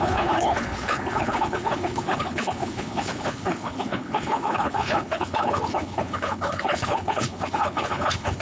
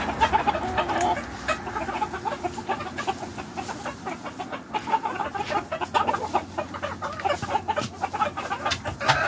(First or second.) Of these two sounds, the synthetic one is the first